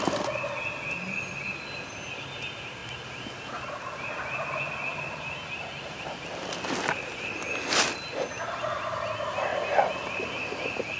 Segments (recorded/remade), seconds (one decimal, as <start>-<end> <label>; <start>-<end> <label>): 0.0-11.0 recorded